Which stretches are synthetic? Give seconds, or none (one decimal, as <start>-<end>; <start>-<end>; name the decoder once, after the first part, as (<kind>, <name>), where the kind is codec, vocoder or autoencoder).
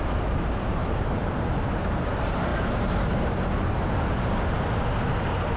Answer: 0.0-5.6 (vocoder, BigVGAN v2)